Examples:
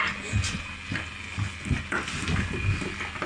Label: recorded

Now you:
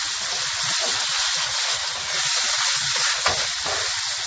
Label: recorded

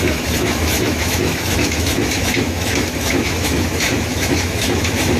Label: remade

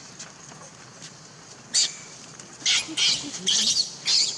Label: recorded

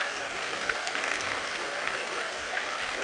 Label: remade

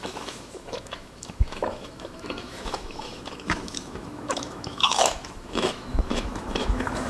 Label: remade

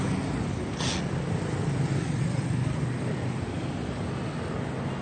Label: recorded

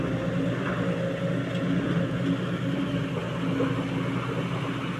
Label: recorded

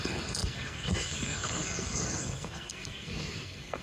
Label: remade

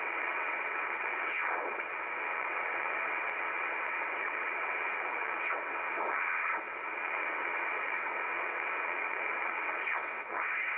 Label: remade